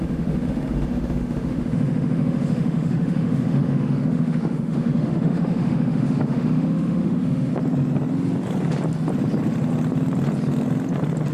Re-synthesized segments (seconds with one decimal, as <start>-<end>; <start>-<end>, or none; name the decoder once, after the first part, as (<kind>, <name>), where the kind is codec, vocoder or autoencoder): 0.0-7.5 (autoencoder, DAC-VAE)